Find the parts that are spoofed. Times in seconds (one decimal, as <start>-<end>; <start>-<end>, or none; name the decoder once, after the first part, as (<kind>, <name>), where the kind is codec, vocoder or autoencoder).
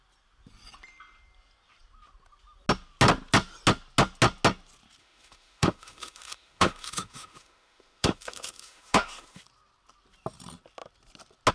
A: 5.0-9.4 (autoencoder, DAC-VAE)